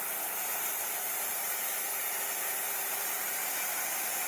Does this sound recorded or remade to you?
remade